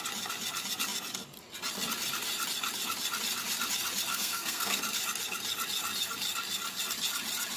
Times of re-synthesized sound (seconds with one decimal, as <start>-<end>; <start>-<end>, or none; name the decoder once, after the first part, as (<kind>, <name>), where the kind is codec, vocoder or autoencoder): 4.1-4.8 (codec, SNAC)